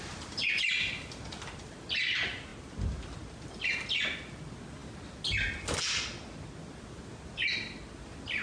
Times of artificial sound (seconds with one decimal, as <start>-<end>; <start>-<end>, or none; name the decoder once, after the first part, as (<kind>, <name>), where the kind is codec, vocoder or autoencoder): none